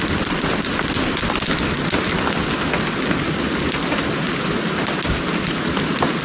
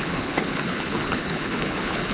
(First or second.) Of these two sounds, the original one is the first